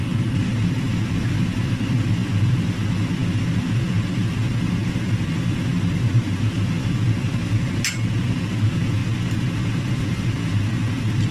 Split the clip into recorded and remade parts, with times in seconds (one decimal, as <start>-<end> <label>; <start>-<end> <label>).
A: 0.0-11.3 recorded